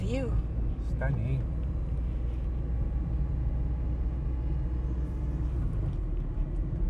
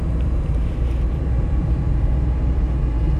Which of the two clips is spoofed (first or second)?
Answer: second